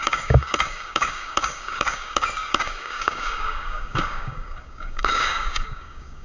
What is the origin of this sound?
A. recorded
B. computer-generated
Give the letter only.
B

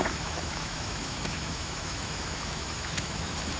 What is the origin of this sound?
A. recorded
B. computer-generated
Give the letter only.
B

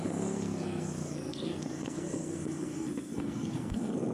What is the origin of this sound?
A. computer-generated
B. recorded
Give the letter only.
A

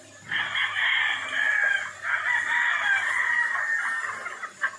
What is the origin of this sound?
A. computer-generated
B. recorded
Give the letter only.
B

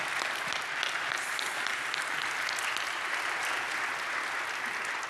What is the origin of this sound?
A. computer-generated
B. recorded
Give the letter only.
B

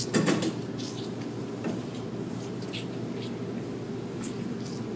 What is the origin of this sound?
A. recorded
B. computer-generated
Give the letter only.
A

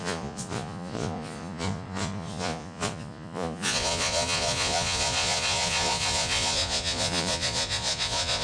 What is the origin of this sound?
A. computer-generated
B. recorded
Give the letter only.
A